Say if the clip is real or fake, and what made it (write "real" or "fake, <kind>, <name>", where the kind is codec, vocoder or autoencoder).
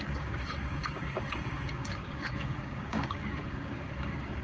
fake, codec, DAC